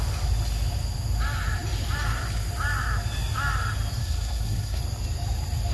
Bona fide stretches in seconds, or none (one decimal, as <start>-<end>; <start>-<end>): 0.0-4.0; 4.8-5.7